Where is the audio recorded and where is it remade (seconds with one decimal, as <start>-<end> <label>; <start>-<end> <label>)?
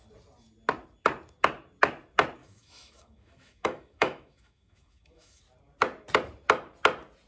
0.0-2.4 recorded; 2.4-5.4 remade; 5.4-7.3 recorded